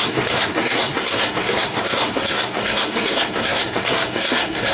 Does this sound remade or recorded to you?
remade